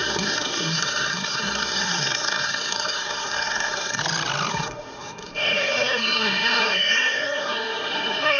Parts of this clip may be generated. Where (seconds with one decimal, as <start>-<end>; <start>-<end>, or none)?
0.0-4.0; 4.5-8.4